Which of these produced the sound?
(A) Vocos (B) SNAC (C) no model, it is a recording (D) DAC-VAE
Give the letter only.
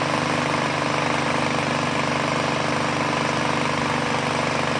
C